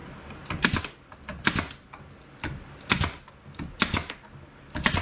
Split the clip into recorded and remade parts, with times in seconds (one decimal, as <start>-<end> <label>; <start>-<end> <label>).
0.0-5.0 recorded